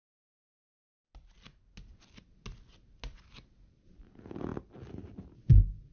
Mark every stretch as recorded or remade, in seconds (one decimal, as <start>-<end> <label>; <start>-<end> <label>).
0.0-5.9 recorded